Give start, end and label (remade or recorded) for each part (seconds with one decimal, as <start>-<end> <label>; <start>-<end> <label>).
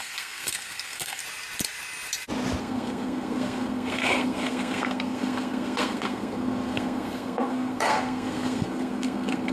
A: 0.0-1.2 remade; 1.2-2.6 recorded; 2.6-9.5 remade